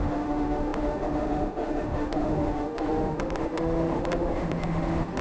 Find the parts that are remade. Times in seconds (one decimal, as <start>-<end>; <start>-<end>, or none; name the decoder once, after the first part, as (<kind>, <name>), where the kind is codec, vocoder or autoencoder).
0.0-5.2 (autoencoder, DAC-VAE)